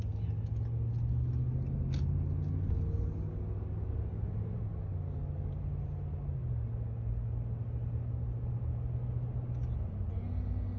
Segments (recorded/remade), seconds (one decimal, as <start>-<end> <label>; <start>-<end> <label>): 0.0-4.1 recorded; 4.1-4.6 remade; 4.6-10.8 recorded